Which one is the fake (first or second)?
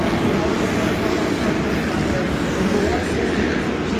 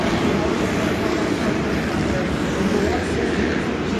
second